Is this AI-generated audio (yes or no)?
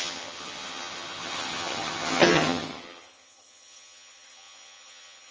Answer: yes